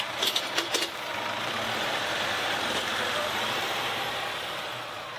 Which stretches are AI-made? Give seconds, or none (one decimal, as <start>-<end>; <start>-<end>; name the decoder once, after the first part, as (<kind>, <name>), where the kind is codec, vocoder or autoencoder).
1.1-4.2 (vocoder, BigVGAN v2)